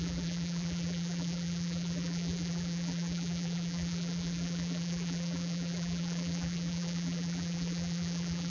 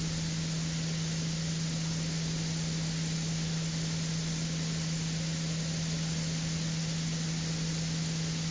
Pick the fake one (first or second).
first